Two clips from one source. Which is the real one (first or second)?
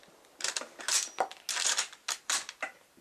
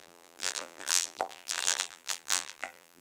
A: first